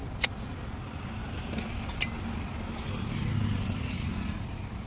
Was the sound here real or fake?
real